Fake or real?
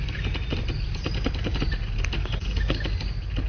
real